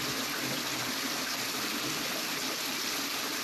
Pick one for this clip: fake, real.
real